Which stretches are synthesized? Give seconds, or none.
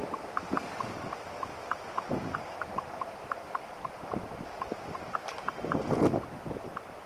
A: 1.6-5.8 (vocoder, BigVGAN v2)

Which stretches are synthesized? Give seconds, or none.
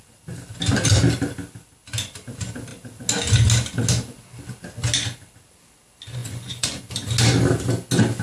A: 6.2-6.8 (vocoder, Vocos)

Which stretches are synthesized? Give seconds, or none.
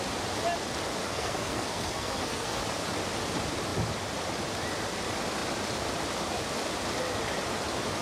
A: 1.0-2.6 (codec, SNAC)